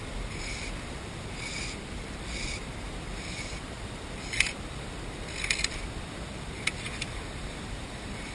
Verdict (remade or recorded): remade